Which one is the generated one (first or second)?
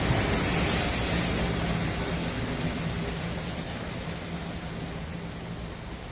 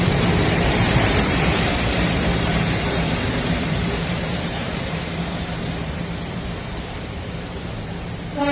second